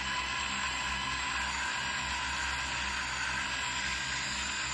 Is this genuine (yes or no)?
yes